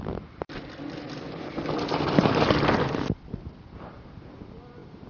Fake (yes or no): no